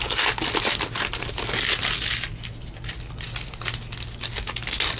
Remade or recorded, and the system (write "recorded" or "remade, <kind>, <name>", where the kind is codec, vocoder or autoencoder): recorded